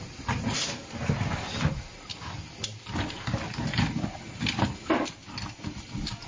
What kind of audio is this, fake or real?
real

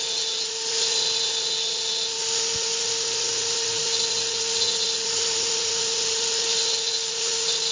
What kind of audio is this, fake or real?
real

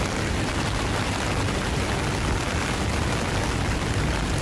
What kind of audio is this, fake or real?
real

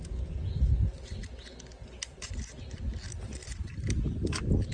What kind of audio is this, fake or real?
real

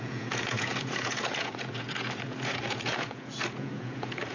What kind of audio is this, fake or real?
fake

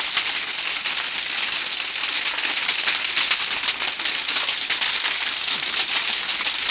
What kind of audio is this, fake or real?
real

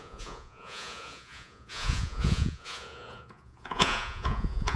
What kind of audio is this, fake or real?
fake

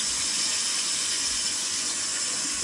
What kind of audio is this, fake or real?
fake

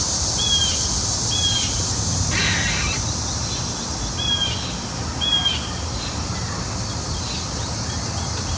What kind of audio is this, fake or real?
real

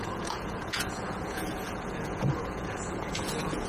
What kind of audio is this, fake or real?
fake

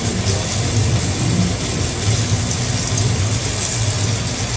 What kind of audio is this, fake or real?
real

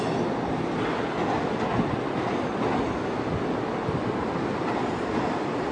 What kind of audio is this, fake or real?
real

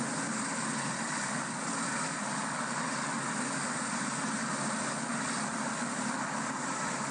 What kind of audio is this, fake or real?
real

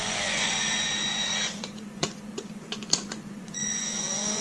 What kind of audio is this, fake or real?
fake